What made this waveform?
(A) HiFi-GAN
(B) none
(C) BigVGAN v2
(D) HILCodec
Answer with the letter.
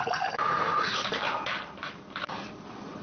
B